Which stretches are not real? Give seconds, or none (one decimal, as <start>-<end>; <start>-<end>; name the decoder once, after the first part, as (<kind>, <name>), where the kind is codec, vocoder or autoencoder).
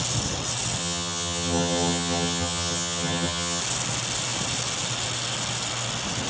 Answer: 0.8-3.6 (vocoder, HiFi-GAN)